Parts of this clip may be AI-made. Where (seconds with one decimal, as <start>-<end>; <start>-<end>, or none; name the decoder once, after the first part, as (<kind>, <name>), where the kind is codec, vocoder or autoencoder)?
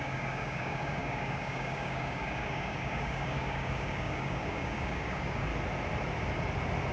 0.0-5.5 (codec, DAC)